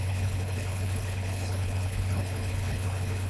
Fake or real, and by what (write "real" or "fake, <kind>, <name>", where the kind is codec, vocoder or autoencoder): fake, codec, HILCodec